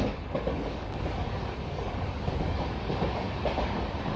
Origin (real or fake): fake